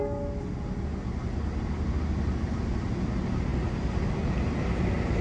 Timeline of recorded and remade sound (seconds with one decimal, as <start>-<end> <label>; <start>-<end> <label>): 0.0-5.2 recorded